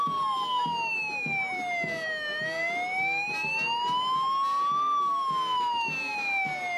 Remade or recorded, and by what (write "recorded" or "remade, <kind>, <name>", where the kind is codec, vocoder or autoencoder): recorded